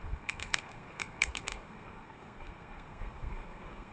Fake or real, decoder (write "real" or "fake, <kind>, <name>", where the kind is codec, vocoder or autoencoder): fake, codec, SNAC